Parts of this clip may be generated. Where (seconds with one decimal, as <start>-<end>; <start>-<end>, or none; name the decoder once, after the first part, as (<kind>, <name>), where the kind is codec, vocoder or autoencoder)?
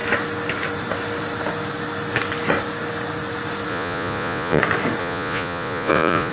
3.7-4.6 (vocoder, Vocos); 5.0-6.3